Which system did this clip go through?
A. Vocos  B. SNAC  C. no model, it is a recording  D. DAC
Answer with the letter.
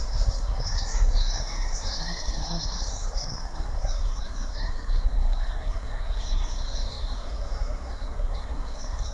B